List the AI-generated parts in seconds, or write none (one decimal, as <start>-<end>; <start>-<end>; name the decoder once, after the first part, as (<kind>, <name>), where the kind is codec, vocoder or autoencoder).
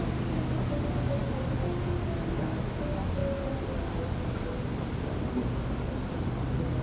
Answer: none